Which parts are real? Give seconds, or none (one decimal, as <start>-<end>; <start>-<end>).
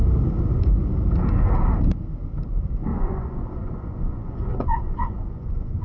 0.0-2.9